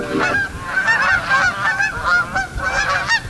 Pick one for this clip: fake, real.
real